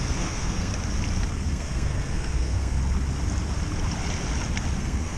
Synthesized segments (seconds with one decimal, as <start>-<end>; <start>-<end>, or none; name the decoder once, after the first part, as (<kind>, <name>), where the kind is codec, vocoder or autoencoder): 0.0-0.7 (codec, SNAC); 1.3-2.8; 4.8-5.2